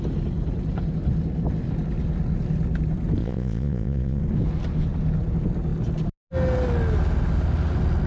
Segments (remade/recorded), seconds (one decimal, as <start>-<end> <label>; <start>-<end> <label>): 0.0-3.2 recorded; 3.2-4.2 remade; 4.2-8.1 recorded